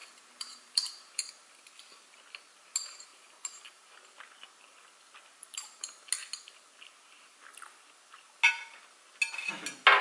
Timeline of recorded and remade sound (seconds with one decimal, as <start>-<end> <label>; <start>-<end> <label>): 0.0-1.3 remade; 1.3-3.1 recorded; 3.1-4.0 remade; 4.0-5.3 recorded; 5.3-6.0 remade; 6.0-10.0 recorded